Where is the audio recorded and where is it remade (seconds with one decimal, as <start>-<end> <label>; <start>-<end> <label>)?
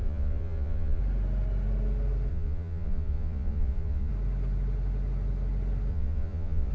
0.0-1.0 remade; 1.0-2.3 recorded; 2.3-4.1 remade; 4.1-5.9 recorded; 5.9-6.7 remade